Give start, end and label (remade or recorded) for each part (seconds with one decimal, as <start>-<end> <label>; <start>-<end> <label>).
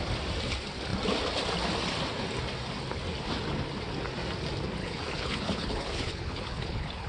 0.0-4.8 recorded; 4.8-7.1 remade